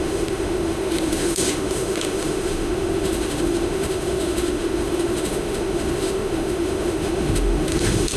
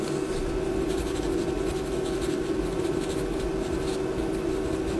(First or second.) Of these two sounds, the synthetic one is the first